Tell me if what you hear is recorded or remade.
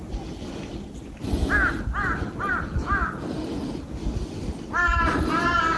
recorded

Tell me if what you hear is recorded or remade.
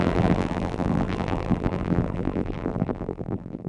remade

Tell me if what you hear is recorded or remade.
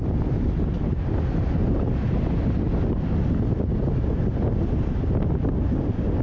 recorded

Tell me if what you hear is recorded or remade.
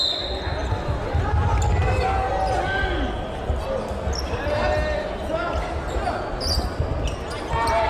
recorded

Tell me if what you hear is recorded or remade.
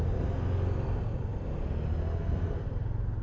recorded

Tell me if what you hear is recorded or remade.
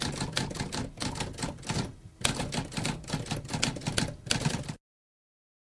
recorded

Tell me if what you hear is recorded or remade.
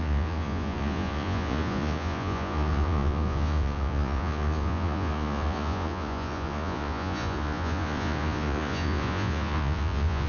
remade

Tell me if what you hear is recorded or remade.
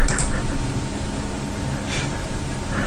remade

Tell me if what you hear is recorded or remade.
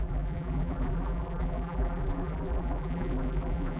remade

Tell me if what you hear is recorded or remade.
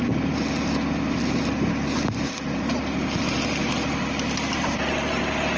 recorded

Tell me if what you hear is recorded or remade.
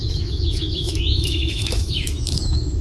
remade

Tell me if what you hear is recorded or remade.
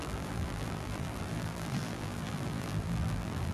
remade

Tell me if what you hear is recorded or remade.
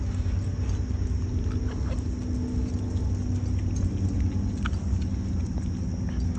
recorded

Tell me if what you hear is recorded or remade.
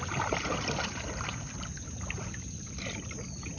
recorded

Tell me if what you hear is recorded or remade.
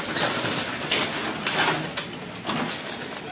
recorded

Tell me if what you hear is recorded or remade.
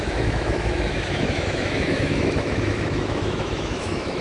remade